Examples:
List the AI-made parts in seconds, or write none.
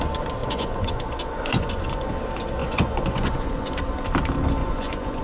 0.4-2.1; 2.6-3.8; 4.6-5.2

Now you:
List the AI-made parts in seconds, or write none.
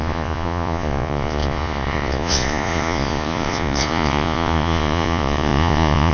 0.0-6.1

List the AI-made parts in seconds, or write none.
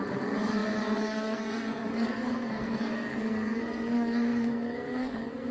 0.0-5.5